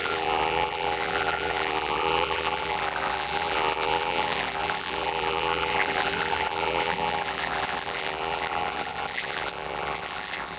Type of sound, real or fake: fake